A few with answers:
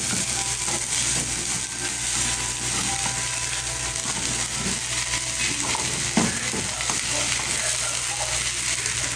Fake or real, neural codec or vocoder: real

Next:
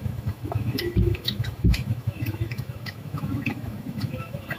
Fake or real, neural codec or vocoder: fake, autoencoder, DAC-VAE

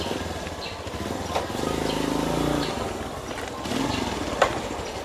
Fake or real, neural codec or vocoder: real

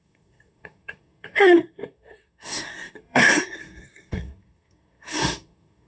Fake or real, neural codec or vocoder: fake, codec, SNAC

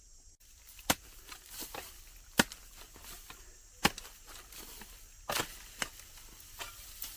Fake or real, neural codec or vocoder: real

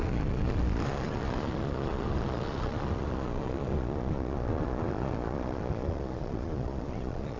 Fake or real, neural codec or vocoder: fake, vocoder, Vocos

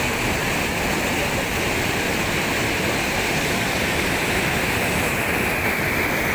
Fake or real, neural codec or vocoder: real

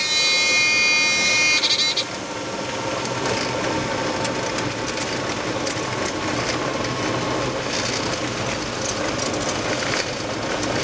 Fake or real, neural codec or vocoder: real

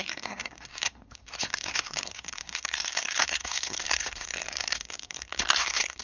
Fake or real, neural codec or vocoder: fake, codec, SNAC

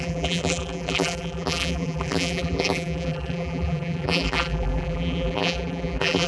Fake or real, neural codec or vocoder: fake, vocoder, BigVGAN v2